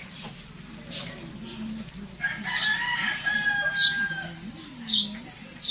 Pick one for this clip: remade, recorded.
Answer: recorded